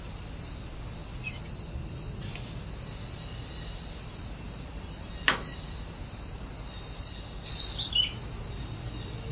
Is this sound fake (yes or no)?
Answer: no